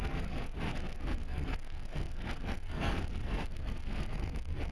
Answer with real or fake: fake